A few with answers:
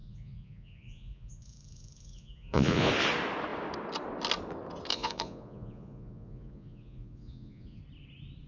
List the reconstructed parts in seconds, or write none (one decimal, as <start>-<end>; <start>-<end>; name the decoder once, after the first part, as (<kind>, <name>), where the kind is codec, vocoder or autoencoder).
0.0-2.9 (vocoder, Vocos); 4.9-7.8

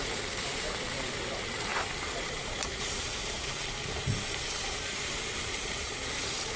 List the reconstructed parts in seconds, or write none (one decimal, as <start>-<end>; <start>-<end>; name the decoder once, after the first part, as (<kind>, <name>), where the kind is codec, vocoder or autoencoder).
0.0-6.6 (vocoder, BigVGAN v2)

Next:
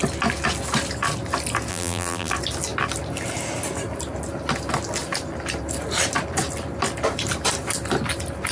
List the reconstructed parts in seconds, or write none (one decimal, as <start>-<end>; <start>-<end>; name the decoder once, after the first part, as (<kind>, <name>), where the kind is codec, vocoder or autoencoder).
1.7-2.3 (vocoder, BigVGAN v2)